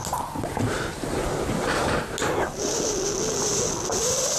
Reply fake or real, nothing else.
real